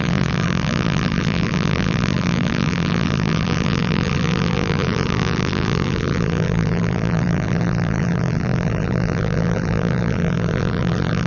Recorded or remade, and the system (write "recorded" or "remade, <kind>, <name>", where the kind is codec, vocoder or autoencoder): remade, vocoder, BigVGAN v2